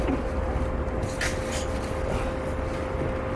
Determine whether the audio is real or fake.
real